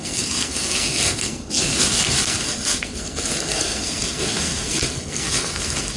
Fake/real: fake